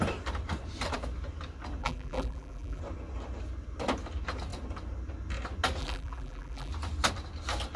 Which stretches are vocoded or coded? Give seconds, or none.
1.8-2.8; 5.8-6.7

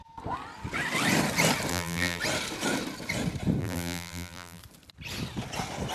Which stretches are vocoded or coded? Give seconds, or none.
1.7-2.2; 3.6-4.6

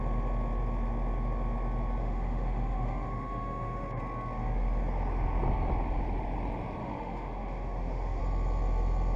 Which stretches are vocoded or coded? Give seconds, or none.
2.0-4.0; 6.8-8.2